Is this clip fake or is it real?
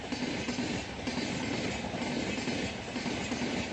real